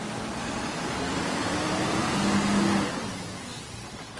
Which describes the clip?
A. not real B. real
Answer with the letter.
B